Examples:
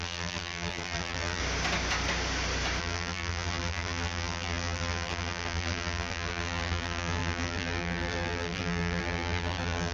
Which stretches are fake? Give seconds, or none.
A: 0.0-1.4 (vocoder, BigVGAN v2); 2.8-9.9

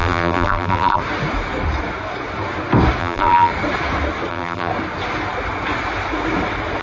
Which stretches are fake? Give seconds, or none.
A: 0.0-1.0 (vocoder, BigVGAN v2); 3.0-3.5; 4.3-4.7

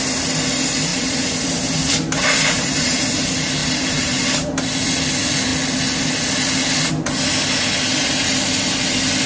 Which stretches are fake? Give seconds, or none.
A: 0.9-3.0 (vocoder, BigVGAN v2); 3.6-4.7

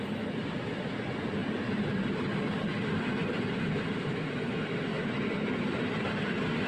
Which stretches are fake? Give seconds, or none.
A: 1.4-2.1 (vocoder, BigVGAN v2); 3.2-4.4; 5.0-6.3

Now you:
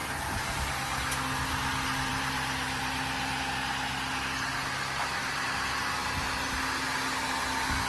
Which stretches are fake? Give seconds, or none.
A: 2.1-3.4 (vocoder, BigVGAN v2)